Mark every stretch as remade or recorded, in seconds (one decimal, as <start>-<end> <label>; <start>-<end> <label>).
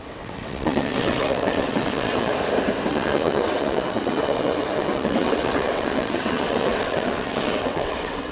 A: 0.0-2.3 remade; 2.3-2.9 recorded; 2.9-8.3 remade